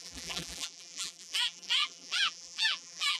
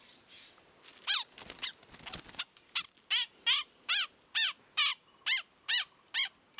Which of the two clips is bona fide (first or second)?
second